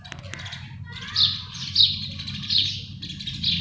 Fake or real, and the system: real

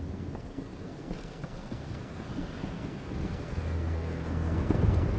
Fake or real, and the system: fake, codec, SNAC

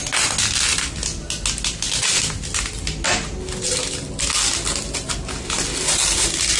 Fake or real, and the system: real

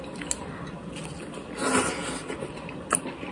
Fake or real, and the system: real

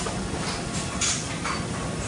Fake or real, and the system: real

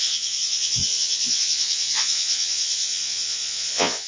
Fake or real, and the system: fake, vocoder, Vocos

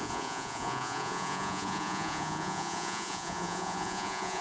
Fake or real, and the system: fake, vocoder, Vocos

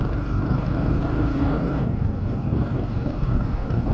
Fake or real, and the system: fake, codec, DAC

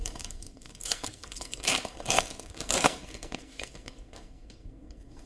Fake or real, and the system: fake, codec, SNAC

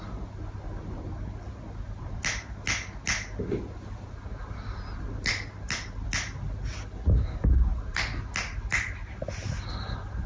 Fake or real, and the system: real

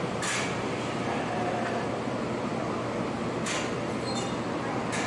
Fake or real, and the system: real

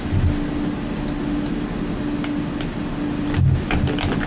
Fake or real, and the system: real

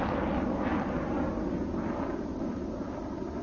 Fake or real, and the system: real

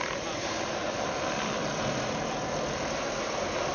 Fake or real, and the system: fake, vocoder, BigVGAN v2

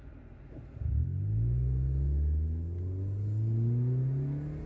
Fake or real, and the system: real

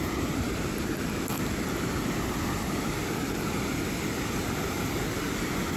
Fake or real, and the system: real